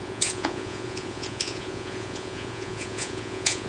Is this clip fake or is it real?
fake